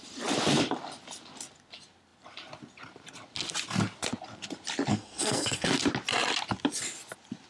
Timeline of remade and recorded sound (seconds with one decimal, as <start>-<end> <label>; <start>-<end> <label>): 0.0-4.9 recorded; 4.9-5.7 remade; 5.7-7.5 recorded